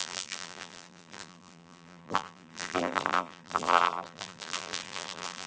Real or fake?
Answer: fake